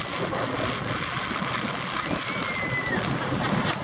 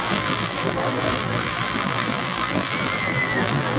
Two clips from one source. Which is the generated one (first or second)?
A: second